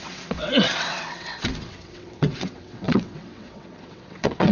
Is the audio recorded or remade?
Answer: remade